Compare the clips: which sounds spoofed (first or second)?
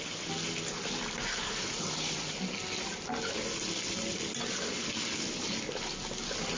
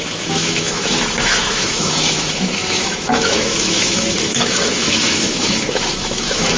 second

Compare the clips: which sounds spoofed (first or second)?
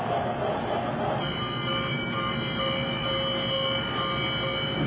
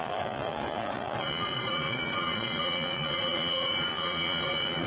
second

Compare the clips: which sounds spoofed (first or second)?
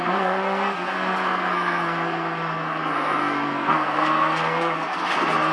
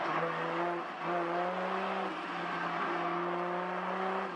first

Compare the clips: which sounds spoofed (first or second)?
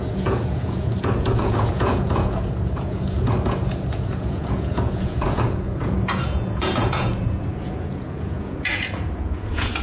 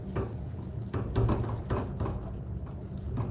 first